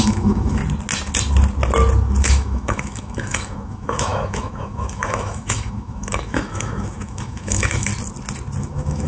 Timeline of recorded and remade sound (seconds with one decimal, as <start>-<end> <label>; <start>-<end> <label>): 0.0-0.6 remade; 0.6-2.2 recorded; 2.2-7.9 remade; 7.9-8.6 recorded; 8.6-9.1 remade